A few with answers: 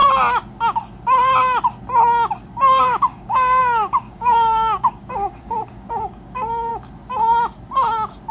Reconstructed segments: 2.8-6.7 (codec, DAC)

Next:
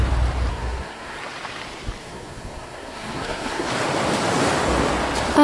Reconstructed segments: 0.5-1.2 (codec, SNAC); 2.0-3.7

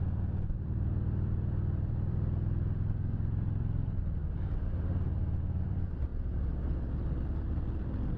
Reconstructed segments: 0.0-6.1 (vocoder, BigVGAN v2); 7.4-8.2

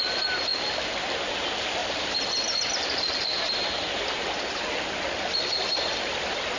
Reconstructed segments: none

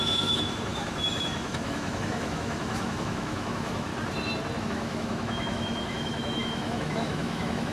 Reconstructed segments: 0.0-3.9 (autoencoder, DAC-VAE); 4.6-7.7

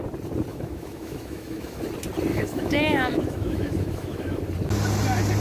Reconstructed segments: 0.5-1.8 (autoencoder, DAC-VAE); 2.3-4.4